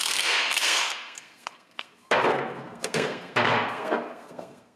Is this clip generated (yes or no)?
yes